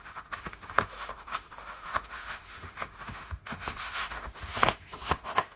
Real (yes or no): no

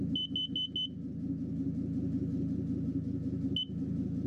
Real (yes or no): yes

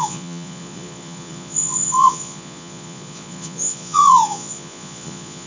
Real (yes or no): no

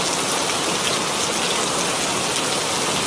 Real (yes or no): yes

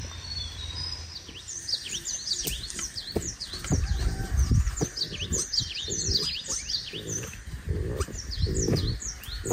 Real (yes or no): yes